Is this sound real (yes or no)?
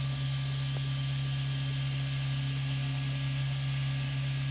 yes